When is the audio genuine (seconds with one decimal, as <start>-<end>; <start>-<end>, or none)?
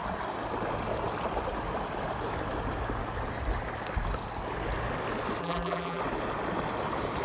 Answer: 0.0-5.4; 6.0-7.2